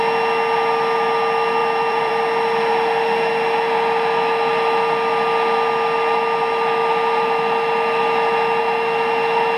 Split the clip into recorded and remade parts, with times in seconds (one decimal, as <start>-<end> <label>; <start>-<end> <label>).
0.0-1.6 recorded; 1.6-2.1 remade; 2.1-9.6 recorded